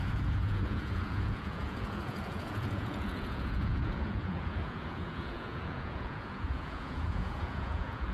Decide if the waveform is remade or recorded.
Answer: remade